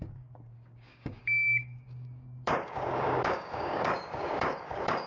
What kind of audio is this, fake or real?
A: fake